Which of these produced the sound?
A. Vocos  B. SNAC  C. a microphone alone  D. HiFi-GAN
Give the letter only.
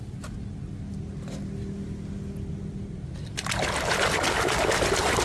C